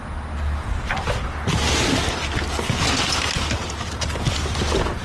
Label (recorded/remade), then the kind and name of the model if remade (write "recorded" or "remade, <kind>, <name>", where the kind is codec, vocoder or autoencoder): recorded